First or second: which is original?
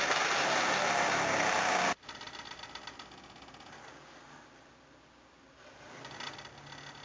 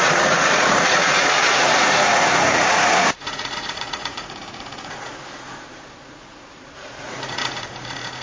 first